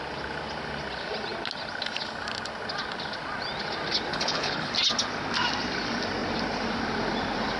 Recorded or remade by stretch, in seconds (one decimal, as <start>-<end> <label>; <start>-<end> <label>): 0.0-4.1 recorded; 4.1-4.7 remade; 4.7-7.6 recorded